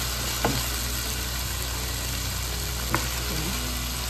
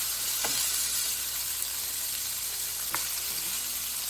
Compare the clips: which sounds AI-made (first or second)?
second